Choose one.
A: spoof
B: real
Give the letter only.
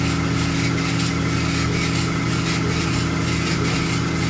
B